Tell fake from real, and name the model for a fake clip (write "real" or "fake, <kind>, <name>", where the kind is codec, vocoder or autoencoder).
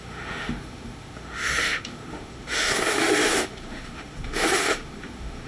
fake, autoencoder, DAC-VAE